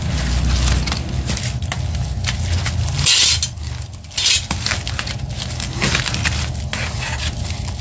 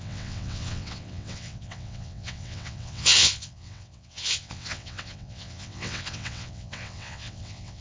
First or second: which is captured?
first